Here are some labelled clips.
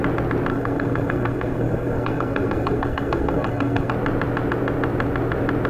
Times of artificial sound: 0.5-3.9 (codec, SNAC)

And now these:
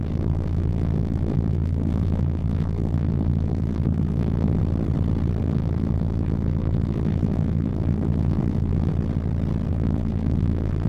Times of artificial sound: 0.0-4.6 (codec, SNAC); 5.4-8.9; 9.7-10.9

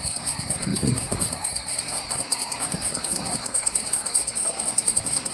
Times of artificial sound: 0.0-5.3 (codec, SNAC)

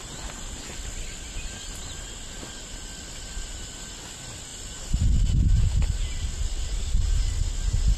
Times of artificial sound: none

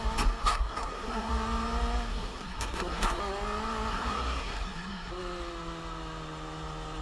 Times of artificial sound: 0.4-1.3 (codec, SNAC); 2.1-3.2; 3.9-5.1

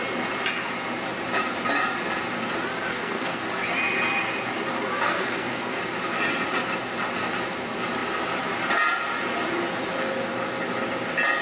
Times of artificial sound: 2.9-3.4 (codec, SNAC); 5.1-5.8

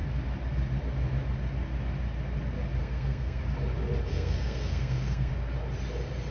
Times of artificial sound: 2.8-3.4 (codec, SNAC); 4.1-5.3

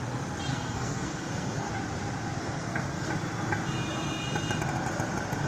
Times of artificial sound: 0.5-1.7 (codec, SNAC); 2.4-3.1